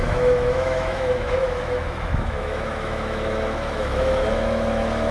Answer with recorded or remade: remade